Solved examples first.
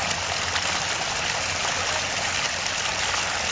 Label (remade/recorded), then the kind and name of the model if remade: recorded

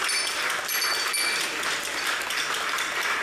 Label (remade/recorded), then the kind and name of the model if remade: recorded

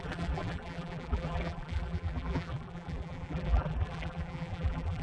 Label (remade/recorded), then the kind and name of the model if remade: remade, vocoder, BigVGAN v2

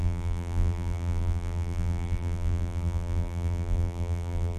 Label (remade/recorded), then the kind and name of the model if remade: remade, vocoder, BigVGAN v2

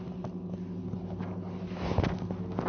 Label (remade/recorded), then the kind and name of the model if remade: recorded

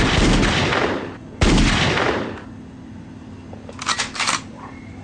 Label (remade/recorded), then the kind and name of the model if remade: recorded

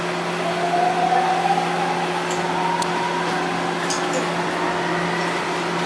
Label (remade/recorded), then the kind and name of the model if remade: recorded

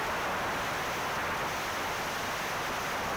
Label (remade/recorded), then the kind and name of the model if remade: recorded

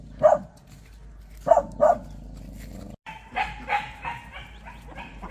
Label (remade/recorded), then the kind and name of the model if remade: recorded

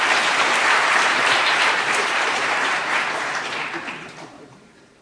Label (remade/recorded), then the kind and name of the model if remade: remade, vocoder, BigVGAN v2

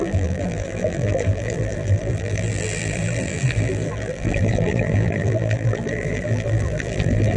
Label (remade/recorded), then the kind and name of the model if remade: remade, vocoder, BigVGAN v2